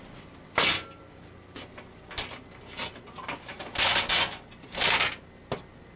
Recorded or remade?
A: recorded